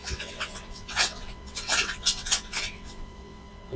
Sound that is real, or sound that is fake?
fake